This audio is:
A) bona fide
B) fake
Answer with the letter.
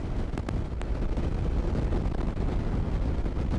A